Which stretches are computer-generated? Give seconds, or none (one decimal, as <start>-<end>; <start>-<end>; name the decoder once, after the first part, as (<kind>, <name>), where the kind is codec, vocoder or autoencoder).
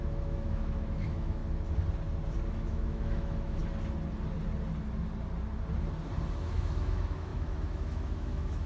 0.0-1.4 (autoencoder, DAC-VAE); 2.5-3.6; 6.4-8.7